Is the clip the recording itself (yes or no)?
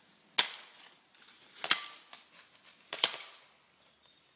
yes